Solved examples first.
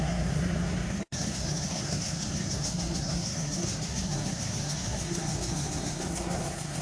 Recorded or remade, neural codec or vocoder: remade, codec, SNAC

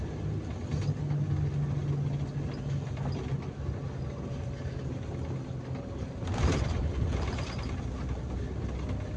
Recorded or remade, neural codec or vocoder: recorded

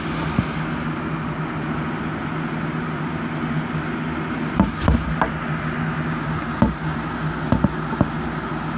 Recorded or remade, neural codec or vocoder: recorded